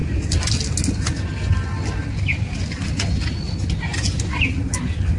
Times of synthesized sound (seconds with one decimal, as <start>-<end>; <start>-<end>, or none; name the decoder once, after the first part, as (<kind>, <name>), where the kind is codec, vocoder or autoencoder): none